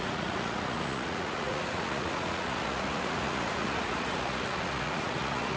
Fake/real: fake